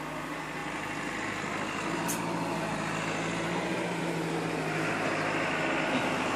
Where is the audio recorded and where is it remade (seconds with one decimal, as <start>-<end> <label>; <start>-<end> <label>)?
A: 0.0-0.6 recorded; 0.6-4.0 remade; 4.0-6.4 recorded